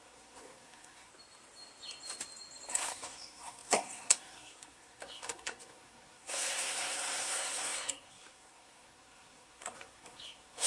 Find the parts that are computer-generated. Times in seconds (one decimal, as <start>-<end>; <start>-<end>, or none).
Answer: 0.0-1.1; 2.7-10.7